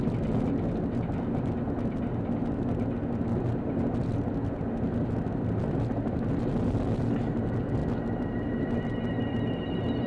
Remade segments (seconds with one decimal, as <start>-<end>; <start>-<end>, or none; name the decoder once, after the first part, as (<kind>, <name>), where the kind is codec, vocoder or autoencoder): none